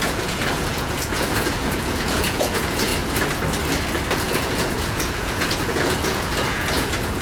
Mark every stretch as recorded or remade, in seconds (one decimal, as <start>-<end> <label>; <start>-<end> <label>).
0.0-2.9 remade; 2.9-4.2 recorded; 4.2-7.2 remade